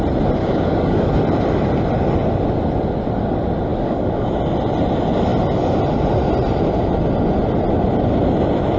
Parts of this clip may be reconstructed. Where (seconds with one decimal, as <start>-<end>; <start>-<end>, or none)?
0.4-1.1; 3.7-4.3